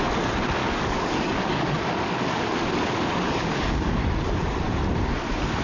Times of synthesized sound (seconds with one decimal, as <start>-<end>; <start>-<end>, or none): 0.6-4.0